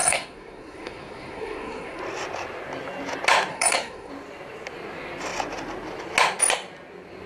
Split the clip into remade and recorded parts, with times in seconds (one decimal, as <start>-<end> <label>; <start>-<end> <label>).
0.0-2.0 remade; 2.0-3.5 recorded; 3.5-4.1 remade; 4.1-7.3 recorded